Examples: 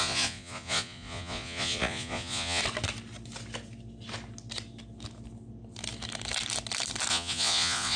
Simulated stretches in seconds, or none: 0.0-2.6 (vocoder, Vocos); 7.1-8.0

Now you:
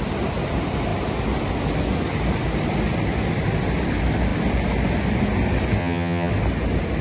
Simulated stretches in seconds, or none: 5.8-6.3 (vocoder, HiFi-GAN)

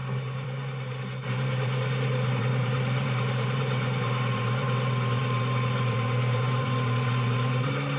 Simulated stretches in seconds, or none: 0.0-8.0 (vocoder, BigVGAN v2)

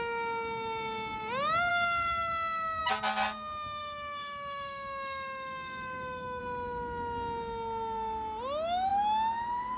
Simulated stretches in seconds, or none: 1.7-2.8 (autoencoder, DAC-VAE); 3.8-6.4

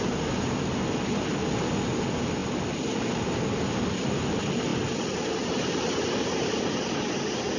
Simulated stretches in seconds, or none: none

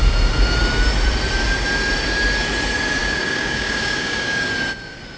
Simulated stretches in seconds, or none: 3.0-4.5 (codec, DAC)

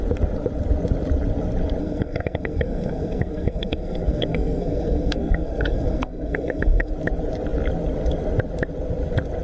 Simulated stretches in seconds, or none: 1.8-6.9 (codec, SNAC)